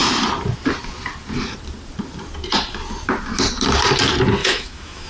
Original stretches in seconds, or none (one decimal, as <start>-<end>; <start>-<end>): 0.0-4.4